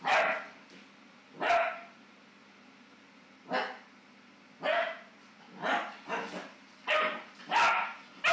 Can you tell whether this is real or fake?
real